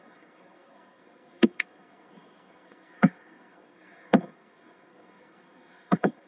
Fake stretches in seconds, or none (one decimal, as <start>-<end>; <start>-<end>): 0.0-6.3

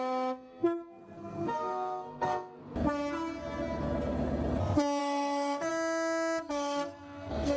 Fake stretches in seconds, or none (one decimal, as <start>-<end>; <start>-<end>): 0.0-2.6; 5.0-5.7; 6.4-7.6

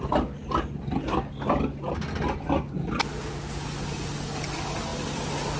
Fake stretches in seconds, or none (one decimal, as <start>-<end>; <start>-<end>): none